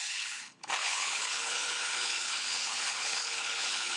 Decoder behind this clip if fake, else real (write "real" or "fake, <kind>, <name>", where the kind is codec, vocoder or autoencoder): fake, codec, HILCodec